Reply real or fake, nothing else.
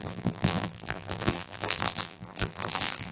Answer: fake